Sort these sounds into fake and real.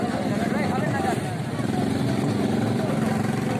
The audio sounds real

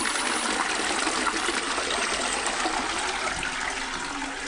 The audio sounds real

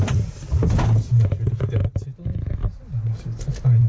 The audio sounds real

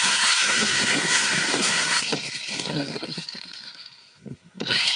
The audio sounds fake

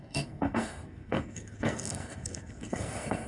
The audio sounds fake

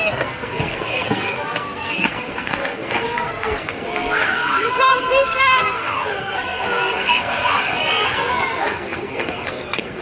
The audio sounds fake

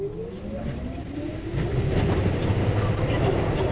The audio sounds real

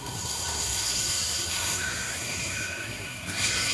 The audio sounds fake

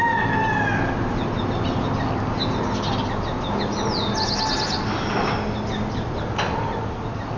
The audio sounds real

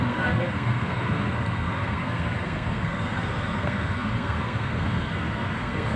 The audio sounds fake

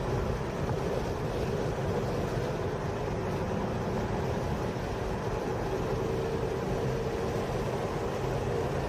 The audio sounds real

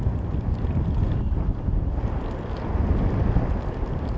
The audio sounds real